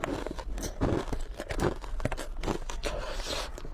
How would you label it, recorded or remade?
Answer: recorded